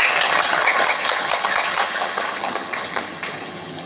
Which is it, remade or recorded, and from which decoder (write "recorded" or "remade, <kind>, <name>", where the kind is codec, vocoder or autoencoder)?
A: remade, vocoder, HiFi-GAN